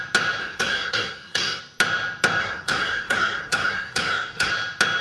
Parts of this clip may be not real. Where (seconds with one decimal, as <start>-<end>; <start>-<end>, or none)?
0.4-1.6; 2.4-4.5

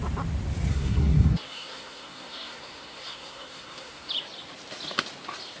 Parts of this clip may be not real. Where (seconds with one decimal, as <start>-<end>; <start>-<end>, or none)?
0.7-4.1

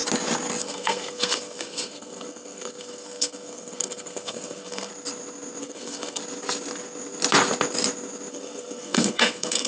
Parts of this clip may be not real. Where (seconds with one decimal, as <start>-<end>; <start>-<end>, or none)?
0.6-4.9; 5.6-6.2; 8.3-9.7

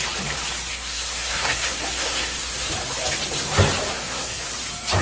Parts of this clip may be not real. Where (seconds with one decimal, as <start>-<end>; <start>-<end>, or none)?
0.7-2.7; 3.9-4.5

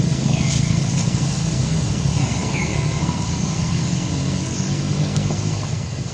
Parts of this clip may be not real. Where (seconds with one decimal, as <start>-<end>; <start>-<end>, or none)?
0.0-6.1